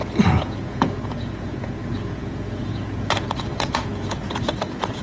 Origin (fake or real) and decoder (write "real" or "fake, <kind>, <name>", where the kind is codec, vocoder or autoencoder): fake, vocoder, Vocos